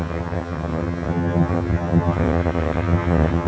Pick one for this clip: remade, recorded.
remade